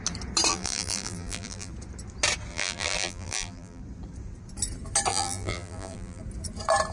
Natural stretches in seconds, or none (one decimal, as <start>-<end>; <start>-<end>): 0.0-0.5; 1.7-2.5; 3.8-5.1; 6.2-6.9